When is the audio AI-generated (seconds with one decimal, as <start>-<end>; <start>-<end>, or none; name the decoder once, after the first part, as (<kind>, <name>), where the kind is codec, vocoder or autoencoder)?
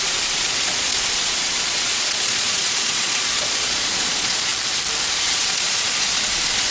0.0-4.5 (vocoder, Vocos); 5.1-6.7